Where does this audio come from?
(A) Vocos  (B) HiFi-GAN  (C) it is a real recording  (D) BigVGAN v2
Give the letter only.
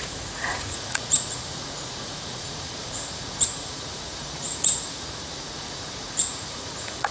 A